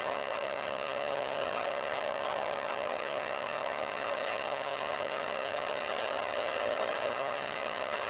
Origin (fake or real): fake